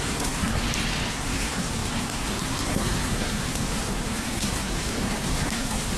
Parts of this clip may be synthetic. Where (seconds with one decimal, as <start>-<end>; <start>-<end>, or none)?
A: 0.0-0.6; 1.1-6.0

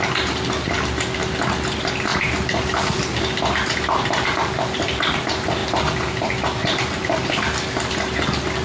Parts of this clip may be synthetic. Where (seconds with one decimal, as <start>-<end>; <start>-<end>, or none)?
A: none

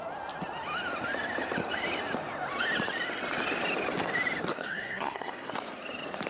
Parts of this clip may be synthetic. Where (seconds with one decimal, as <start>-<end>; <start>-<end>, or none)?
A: 4.5-5.5

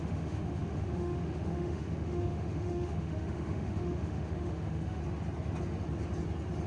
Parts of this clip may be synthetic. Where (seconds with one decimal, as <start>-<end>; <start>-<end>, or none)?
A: 0.0-5.0

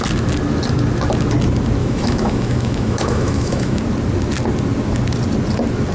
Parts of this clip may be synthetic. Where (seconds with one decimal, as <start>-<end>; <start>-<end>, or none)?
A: 1.8-3.8

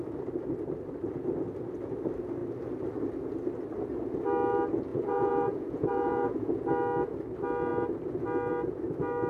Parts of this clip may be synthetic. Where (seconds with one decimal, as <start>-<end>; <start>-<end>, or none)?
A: 4.9-6.7

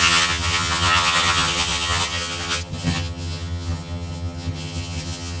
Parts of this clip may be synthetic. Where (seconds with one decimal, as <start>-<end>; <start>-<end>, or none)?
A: 0.0-5.4